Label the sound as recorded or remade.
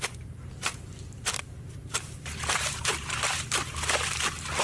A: remade